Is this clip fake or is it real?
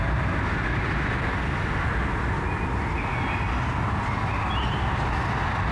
real